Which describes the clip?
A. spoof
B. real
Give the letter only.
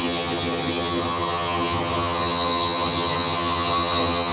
A